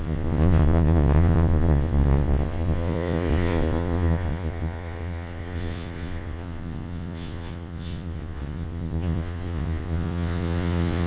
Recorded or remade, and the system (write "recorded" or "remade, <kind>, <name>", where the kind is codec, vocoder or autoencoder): remade, vocoder, Vocos